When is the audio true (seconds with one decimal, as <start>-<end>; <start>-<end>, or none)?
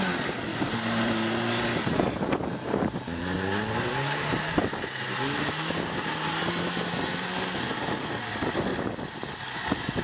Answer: 0.0-0.5; 4.7-8.7; 9.4-10.0